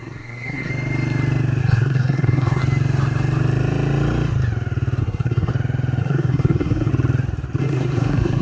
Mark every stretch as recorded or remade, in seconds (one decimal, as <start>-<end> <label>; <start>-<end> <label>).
0.0-0.7 remade; 0.7-1.6 recorded; 1.6-2.6 remade; 2.6-5.0 recorded; 5.0-5.5 remade; 5.5-6.0 recorded; 6.0-6.9 remade; 6.9-7.6 recorded; 7.6-8.4 remade